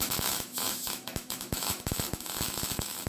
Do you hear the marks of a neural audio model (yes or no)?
yes